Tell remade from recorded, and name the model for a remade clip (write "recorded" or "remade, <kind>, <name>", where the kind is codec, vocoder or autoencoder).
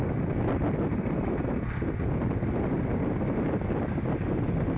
recorded